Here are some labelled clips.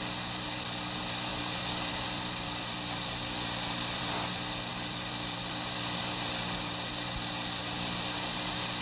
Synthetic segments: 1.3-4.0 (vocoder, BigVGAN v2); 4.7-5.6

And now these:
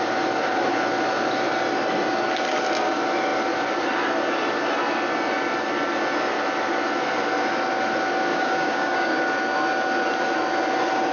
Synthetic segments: 8.3-9.2 (codec, DAC)

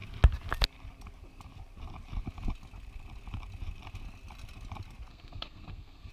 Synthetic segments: 5.1-6.1 (codec, SNAC)

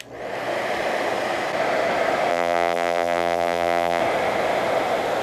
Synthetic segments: 2.3-4.0 (vocoder, BigVGAN v2)

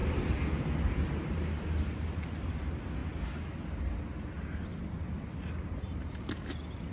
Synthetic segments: none

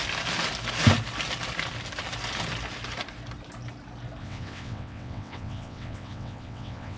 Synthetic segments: 4.2-7.0 (vocoder, WaveNeXt)